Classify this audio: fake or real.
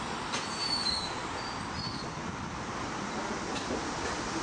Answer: real